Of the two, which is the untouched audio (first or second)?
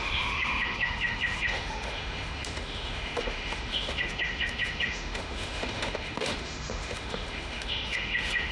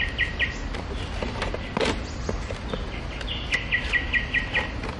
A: second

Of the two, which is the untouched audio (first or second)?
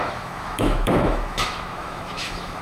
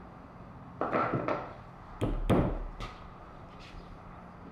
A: second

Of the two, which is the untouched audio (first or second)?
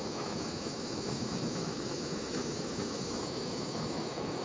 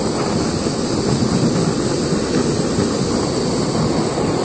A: second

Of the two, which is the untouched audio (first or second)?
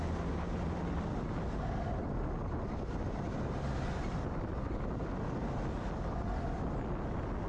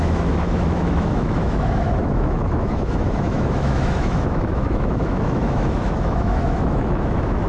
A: first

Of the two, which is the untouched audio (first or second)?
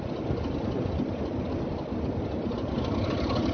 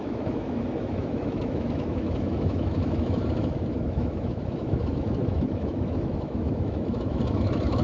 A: first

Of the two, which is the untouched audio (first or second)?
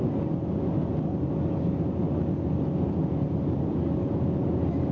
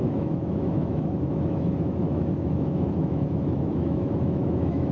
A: first